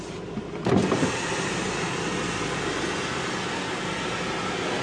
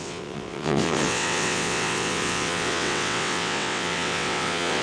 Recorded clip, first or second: first